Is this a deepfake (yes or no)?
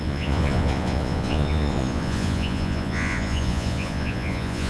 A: yes